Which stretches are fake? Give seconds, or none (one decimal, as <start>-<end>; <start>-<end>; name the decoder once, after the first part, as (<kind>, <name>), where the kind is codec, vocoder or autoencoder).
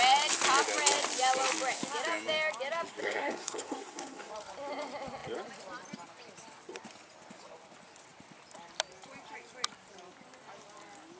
3.0-4.3 (codec, SNAC)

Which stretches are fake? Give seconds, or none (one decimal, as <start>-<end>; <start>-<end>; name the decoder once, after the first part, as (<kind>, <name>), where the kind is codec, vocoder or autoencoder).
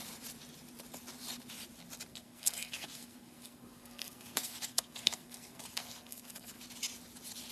2.1-6.6 (codec, SNAC)